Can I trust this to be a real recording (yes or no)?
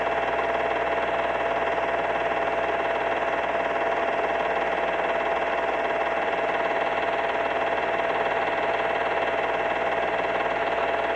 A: yes